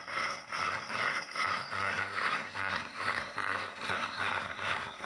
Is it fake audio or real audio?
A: fake